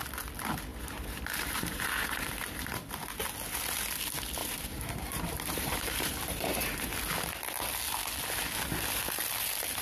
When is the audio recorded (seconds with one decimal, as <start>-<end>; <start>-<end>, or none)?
0.0-0.7; 2.8-4.4; 7.0-9.8